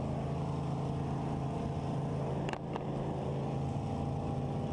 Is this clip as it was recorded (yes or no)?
yes